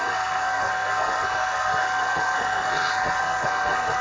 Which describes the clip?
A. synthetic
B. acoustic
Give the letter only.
A